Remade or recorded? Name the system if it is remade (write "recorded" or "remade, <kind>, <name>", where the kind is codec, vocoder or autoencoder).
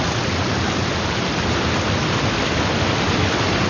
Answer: recorded